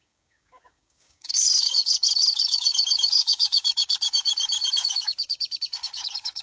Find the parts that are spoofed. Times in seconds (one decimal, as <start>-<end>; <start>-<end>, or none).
0.0-6.4